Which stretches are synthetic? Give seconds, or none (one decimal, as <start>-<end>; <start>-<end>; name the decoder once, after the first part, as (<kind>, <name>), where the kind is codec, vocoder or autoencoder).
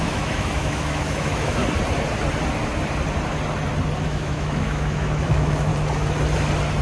0.0-1.6 (autoencoder, DAC-VAE); 4.0-5.7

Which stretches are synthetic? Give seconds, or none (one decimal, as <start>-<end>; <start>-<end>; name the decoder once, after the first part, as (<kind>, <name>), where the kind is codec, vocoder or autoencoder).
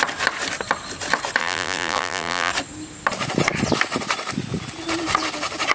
1.4-2.5 (vocoder, BigVGAN v2)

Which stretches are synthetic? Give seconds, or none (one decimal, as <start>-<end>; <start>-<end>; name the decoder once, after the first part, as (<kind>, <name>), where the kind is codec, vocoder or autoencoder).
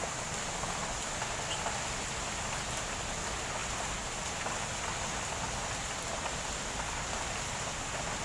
none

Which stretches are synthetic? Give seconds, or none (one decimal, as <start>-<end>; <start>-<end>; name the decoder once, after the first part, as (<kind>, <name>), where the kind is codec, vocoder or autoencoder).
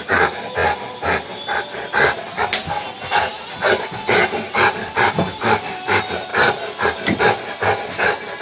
none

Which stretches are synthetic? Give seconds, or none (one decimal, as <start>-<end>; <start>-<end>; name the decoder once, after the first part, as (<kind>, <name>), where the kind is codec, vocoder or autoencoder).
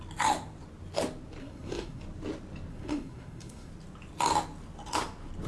1.4-2.0 (codec, SNAC); 2.7-3.7